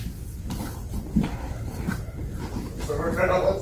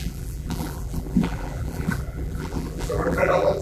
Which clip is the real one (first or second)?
first